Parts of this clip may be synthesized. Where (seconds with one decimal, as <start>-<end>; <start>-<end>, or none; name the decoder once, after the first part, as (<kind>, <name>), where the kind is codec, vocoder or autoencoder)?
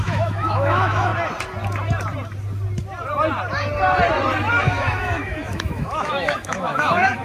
0.0-1.1 (autoencoder, DAC-VAE); 4.6-7.2